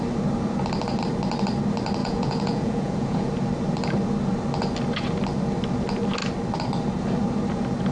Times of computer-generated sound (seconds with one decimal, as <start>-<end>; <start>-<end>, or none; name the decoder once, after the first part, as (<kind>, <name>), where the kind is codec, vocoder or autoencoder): 2.0-3.3 (vocoder, Vocos)